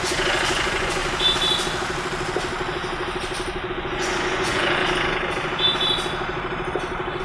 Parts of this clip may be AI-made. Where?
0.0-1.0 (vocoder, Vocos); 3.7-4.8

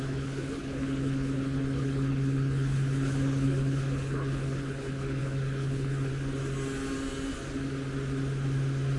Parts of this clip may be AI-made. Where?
0.0-6.1 (codec, HILCodec)

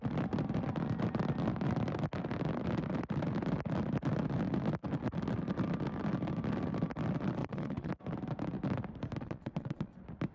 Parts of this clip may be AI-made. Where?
7.4-7.9 (vocoder, Vocos); 9.2-9.9

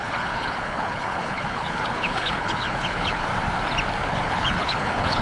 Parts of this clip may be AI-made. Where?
0.0-3.3 (codec, HILCodec); 4.1-5.2

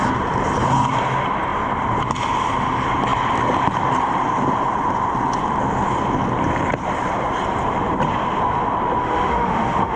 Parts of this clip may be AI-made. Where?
9.0-10.0 (autoencoder, DAC-VAE)

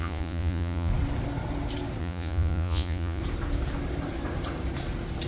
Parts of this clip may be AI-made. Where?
0.0-0.9 (vocoder, Vocos); 2.0-3.2